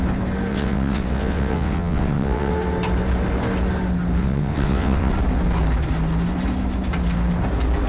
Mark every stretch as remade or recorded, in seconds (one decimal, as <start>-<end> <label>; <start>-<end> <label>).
0.0-0.5 recorded; 0.5-2.5 remade; 2.5-4.2 recorded; 4.2-5.1 remade; 5.1-7.9 recorded